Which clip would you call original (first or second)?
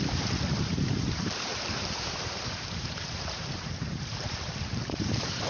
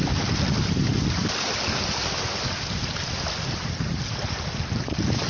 second